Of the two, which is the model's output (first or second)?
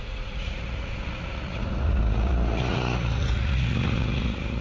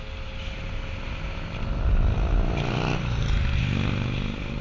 first